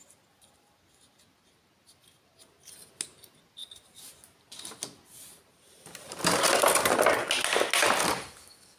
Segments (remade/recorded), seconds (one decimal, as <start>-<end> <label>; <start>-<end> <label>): 0.0-8.8 recorded